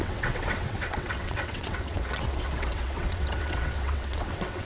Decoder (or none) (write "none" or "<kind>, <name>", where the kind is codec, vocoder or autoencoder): vocoder, WaveNeXt